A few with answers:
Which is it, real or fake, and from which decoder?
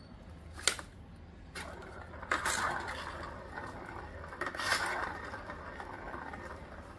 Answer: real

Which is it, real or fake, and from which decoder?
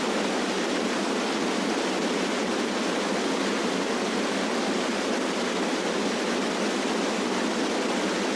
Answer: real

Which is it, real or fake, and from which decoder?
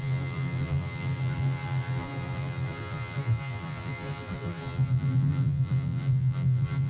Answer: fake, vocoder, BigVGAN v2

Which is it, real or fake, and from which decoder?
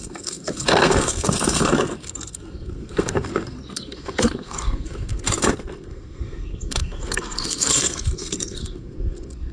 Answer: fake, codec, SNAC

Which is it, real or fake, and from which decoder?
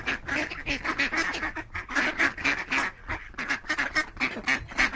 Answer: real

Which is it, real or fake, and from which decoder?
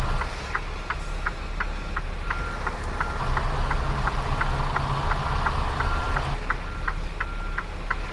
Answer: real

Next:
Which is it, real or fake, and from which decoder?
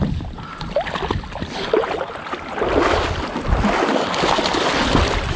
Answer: real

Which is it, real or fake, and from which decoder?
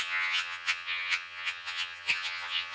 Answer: fake, vocoder, HiFi-GAN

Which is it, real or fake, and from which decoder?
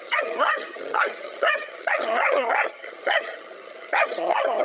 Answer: fake, vocoder, HiFi-GAN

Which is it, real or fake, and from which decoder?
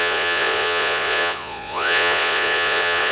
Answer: fake, vocoder, Vocos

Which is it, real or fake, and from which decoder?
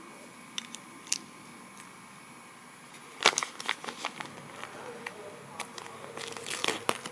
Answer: real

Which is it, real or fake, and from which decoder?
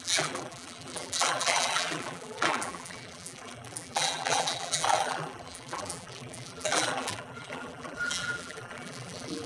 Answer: fake, vocoder, BigVGAN v2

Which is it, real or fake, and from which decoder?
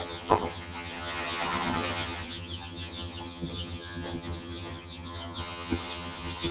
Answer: fake, vocoder, HiFi-GAN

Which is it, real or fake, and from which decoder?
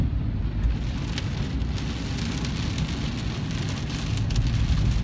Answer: real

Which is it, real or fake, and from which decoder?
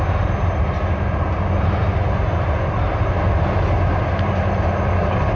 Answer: real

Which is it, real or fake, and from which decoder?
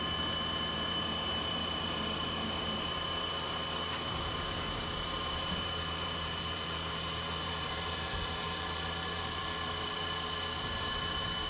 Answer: fake, vocoder, BigVGAN v2